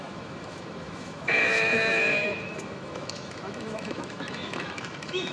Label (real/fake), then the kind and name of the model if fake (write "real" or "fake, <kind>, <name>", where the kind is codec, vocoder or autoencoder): fake, autoencoder, DAC-VAE